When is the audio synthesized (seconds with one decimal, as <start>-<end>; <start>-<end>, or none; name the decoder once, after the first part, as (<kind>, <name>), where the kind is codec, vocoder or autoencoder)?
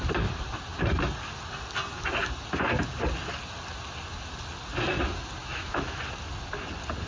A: 5.4-6.0 (autoencoder, DAC-VAE)